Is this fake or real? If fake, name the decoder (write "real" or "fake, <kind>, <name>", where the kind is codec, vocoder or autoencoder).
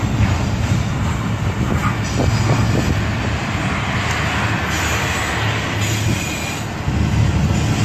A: real